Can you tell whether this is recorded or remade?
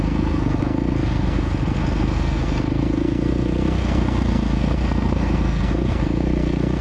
remade